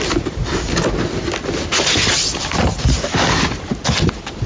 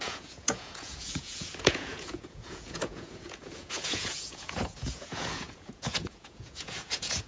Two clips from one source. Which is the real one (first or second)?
first